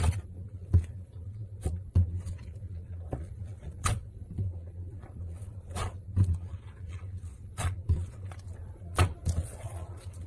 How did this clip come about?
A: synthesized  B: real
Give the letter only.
A